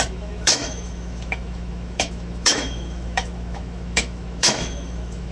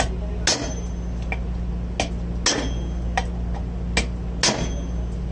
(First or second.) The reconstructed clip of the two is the first